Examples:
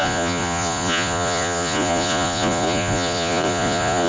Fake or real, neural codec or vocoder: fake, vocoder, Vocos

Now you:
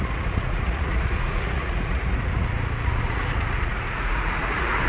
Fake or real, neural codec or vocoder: fake, vocoder, Vocos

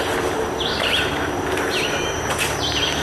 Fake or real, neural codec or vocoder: fake, vocoder, BigVGAN v2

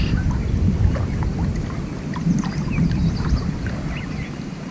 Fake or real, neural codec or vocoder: real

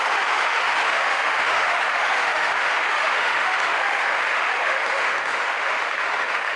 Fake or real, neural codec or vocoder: fake, autoencoder, DAC-VAE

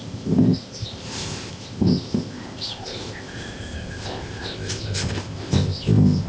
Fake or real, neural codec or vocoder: fake, codec, ZipCodec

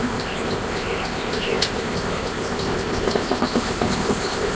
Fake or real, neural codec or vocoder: fake, codec, ZipCodec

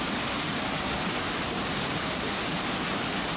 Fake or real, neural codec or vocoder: real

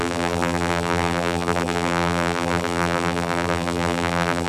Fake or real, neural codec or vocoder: fake, vocoder, BigVGAN v2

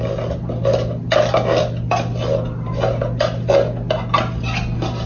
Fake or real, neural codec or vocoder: real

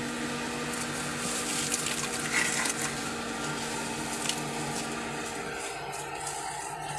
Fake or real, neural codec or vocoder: real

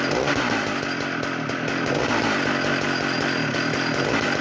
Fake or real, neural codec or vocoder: real